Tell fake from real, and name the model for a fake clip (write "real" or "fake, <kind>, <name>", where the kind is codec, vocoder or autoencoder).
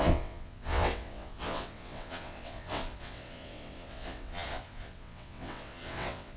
fake, vocoder, WaveNeXt